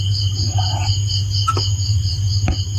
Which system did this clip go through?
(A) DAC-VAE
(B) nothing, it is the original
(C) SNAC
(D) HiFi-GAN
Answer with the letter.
B